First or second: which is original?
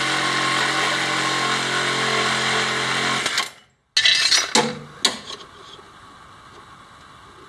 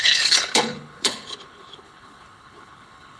first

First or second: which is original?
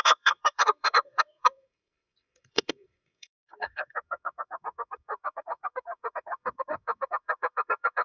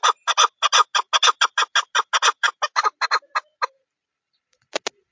second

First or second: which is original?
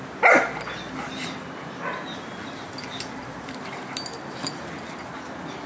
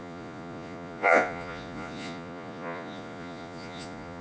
first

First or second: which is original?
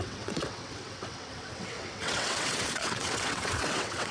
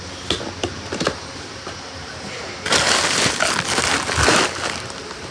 second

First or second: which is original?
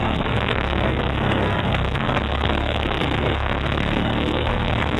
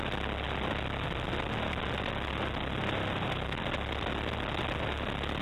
second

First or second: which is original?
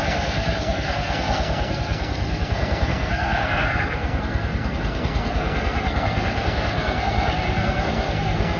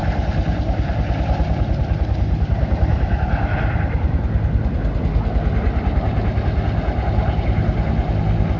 second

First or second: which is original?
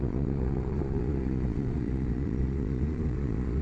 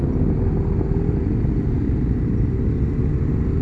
second